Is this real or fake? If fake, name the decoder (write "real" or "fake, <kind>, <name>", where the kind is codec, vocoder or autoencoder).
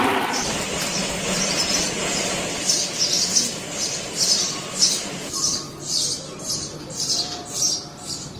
fake, vocoder, BigVGAN v2